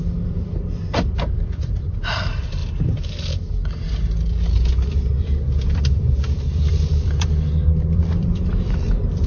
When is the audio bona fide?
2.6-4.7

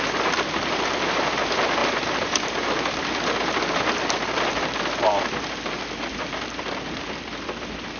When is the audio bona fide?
none

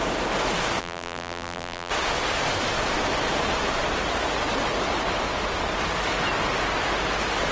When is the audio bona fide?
0.0-0.8; 1.9-7.5

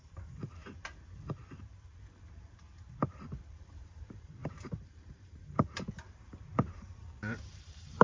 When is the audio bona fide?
0.6-3.0

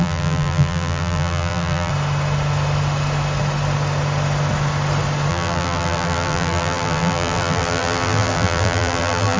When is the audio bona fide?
1.9-5.3